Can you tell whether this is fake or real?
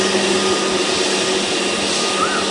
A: real